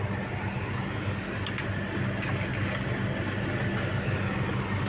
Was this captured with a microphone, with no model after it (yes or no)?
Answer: yes